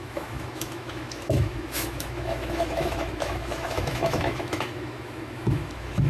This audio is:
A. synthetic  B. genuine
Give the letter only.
A